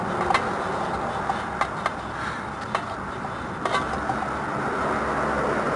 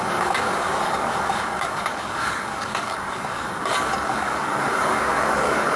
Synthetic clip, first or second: second